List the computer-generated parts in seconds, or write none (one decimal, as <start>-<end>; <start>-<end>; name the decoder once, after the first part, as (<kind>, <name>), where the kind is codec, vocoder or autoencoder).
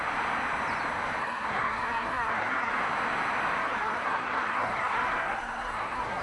1.2-2.7 (codec, SNAC); 3.6-6.2